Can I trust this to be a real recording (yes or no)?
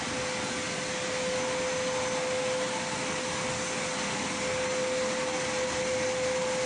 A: yes